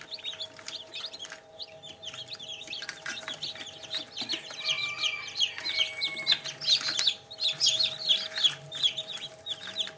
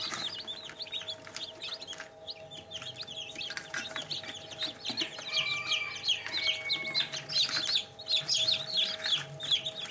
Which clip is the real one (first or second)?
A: second